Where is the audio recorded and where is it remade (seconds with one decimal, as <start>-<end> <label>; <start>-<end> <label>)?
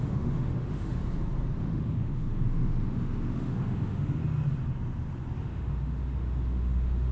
0.0-1.0 remade; 1.0-1.6 recorded; 1.6-4.2 remade; 4.2-5.4 recorded; 5.4-7.1 remade